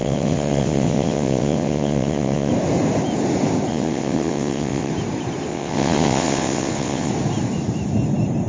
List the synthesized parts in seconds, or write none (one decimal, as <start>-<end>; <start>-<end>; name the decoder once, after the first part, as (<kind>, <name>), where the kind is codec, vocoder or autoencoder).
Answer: 0.0-2.5 (vocoder, WaveNeXt); 3.7-4.9; 5.5-7.1